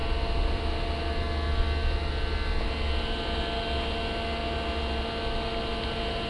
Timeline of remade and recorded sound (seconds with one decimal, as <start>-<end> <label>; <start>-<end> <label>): 0.0-6.3 recorded

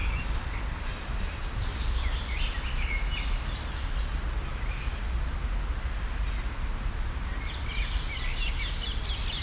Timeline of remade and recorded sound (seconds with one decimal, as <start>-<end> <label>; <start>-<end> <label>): 0.0-9.4 recorded

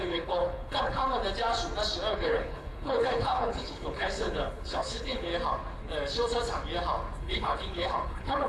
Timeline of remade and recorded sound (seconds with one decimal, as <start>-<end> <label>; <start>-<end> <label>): 0.0-1.0 remade; 1.0-2.1 recorded; 2.1-5.3 remade; 5.3-7.2 recorded; 7.2-8.5 remade

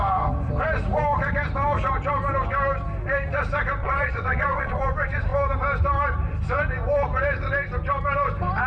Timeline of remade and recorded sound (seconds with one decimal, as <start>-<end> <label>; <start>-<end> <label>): 0.0-3.8 recorded; 3.8-4.8 remade; 4.8-8.7 recorded